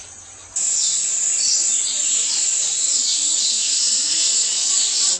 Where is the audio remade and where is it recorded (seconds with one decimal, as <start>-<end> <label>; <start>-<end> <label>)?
0.0-3.5 recorded; 3.5-4.7 remade; 4.7-5.2 recorded